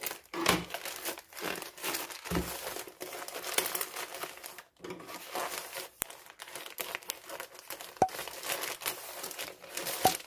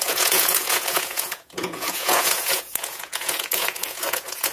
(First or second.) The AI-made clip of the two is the second